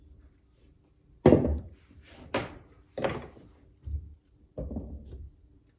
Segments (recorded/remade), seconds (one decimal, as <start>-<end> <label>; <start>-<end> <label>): 0.0-5.8 remade